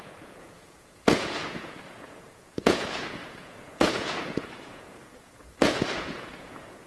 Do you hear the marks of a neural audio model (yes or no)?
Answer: yes